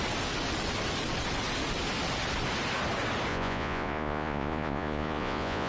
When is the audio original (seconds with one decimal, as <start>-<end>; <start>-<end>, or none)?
0.0-3.3